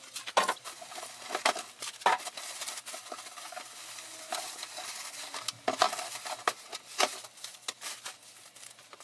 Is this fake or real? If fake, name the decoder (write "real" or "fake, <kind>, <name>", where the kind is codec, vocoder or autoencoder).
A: real